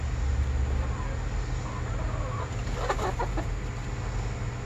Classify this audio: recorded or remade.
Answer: recorded